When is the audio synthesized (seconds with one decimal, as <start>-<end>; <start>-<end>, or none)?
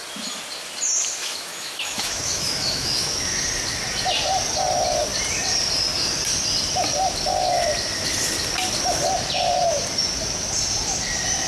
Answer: 1.2-3.4